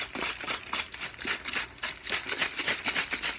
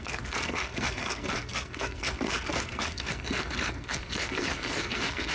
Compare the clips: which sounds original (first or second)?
first